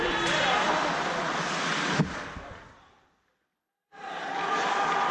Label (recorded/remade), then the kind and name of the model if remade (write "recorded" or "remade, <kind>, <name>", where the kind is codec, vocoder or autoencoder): remade, vocoder, BigVGAN v2